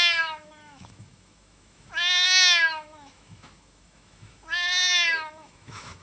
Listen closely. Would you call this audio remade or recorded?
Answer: remade